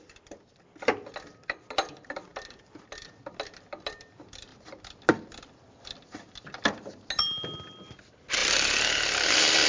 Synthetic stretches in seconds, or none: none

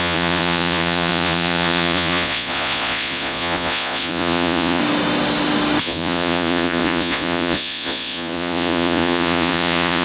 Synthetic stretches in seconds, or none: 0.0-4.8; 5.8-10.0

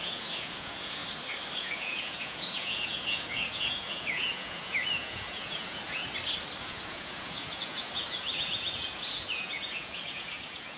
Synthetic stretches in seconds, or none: 0.0-1.0; 1.6-6.0; 6.6-10.8

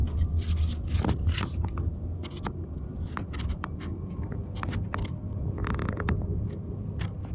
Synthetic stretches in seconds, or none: none

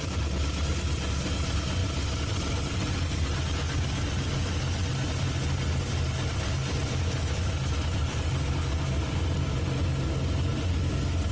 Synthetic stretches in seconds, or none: none